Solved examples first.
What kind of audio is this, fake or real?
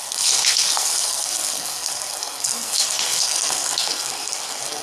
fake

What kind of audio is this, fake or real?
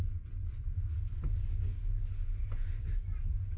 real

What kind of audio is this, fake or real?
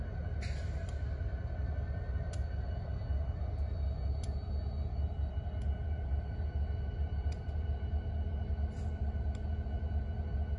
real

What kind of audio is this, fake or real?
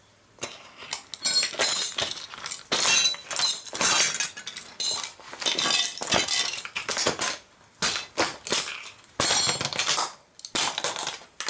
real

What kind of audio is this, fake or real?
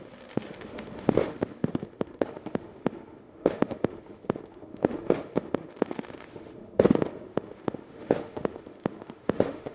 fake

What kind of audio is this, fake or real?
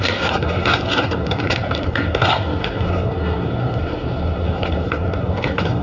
fake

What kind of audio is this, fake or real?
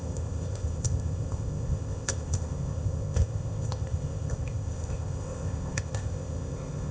fake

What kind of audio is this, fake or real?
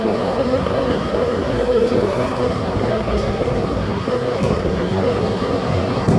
fake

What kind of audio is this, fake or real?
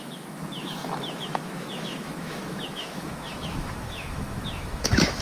fake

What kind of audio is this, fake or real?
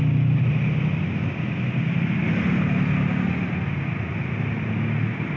real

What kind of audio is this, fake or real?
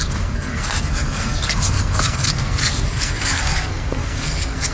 fake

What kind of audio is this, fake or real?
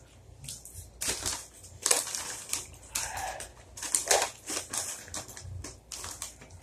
real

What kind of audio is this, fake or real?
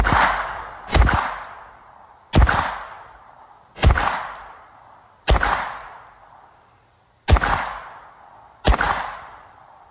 real